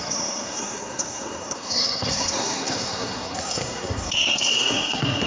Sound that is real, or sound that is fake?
fake